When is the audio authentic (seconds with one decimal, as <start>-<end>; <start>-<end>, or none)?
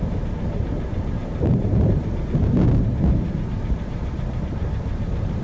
none